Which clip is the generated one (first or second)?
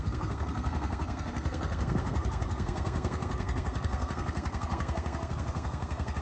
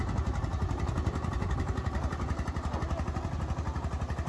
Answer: first